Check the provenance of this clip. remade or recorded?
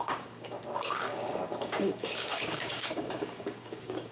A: remade